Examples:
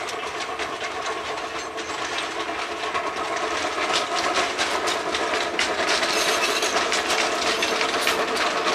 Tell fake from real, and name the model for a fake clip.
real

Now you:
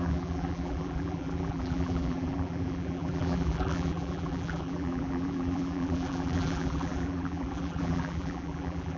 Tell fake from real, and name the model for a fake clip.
fake, vocoder, BigVGAN v2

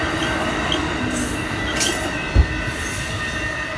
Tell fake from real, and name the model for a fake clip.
fake, vocoder, BigVGAN v2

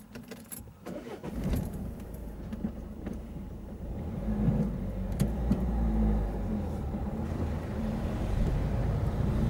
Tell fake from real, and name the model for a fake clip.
fake, vocoder, BigVGAN v2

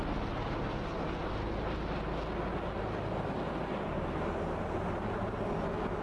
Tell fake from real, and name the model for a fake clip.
real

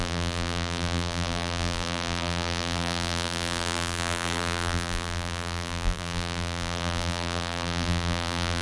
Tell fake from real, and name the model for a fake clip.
fake, vocoder, BigVGAN v2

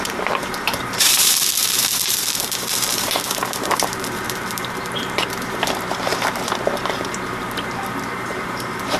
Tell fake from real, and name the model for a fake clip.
fake, vocoder, BigVGAN v2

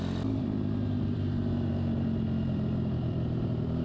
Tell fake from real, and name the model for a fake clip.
fake, vocoder, BigVGAN v2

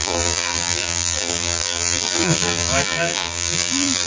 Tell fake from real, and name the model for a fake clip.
fake, vocoder, BigVGAN v2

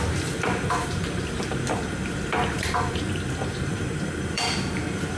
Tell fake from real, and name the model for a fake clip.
fake, vocoder, BigVGAN v2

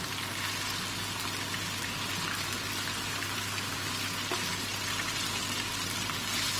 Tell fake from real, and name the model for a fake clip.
real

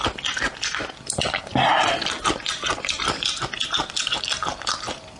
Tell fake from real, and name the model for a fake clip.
real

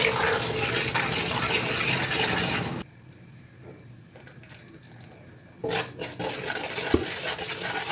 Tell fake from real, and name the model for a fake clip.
real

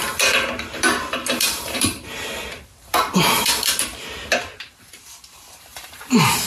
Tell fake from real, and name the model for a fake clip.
fake, vocoder, BigVGAN v2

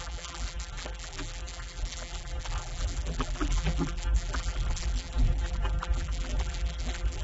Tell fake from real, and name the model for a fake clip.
fake, vocoder, BigVGAN v2